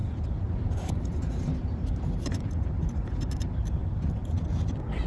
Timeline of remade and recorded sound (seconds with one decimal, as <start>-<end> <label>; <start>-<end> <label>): 0.0-3.1 remade; 3.1-3.8 recorded; 3.8-4.3 remade; 4.3-5.1 recorded